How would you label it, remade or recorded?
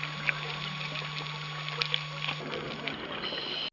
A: recorded